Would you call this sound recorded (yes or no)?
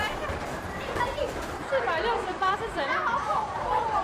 no